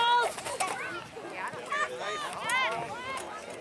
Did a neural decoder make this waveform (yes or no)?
no